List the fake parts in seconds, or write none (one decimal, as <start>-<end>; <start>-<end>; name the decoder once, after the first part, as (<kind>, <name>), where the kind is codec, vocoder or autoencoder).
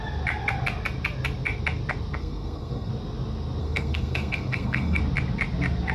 2.2-2.9 (codec, SNAC); 3.6-5.0